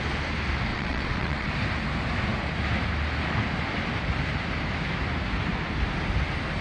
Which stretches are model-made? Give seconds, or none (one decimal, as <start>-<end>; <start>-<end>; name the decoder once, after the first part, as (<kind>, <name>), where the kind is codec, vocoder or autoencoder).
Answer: 0.7-1.5 (vocoder, WaveNeXt)